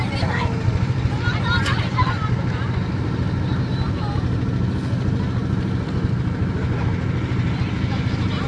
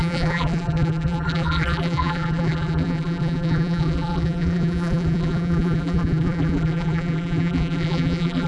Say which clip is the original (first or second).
first